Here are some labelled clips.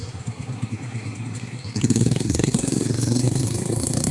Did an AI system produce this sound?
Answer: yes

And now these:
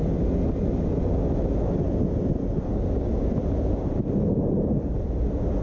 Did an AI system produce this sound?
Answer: no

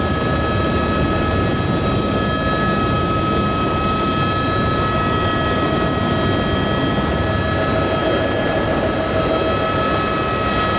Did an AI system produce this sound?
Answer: no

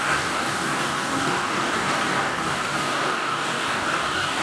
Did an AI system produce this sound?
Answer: yes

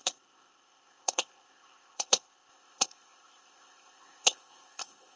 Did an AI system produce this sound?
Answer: yes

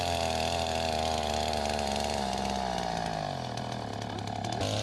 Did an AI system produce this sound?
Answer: no